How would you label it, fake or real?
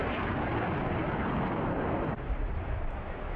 real